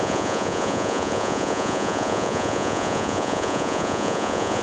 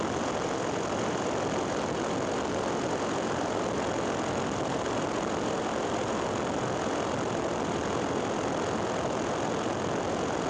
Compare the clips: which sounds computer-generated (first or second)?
first